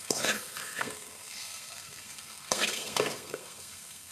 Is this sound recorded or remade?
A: remade